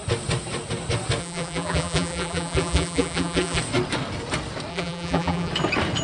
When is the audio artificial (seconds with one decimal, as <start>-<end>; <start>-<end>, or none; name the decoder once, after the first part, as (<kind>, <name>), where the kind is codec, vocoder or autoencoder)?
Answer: 1.2-3.6 (vocoder, BigVGAN v2); 4.7-5.5